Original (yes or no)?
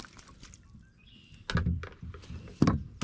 yes